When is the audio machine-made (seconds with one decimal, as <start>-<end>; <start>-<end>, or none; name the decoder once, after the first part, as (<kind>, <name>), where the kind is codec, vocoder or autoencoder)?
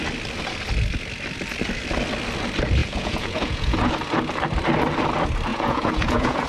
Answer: 2.8-3.9 (vocoder, Vocos); 5.5-6.5